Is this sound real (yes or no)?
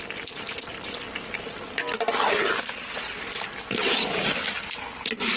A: yes